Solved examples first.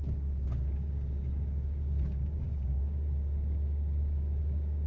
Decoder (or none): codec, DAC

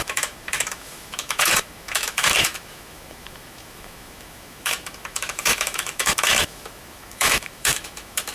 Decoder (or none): autoencoder, DAC-VAE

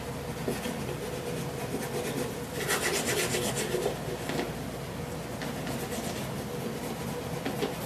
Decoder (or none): none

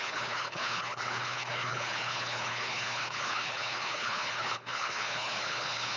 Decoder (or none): codec, HILCodec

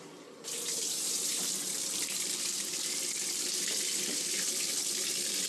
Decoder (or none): vocoder, BigVGAN v2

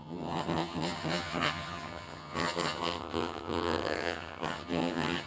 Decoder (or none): vocoder, HiFi-GAN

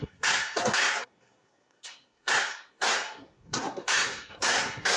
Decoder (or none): codec, SNAC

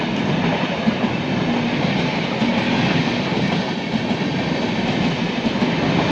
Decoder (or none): none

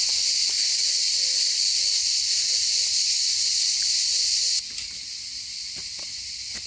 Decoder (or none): none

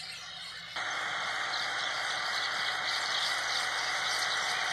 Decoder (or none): none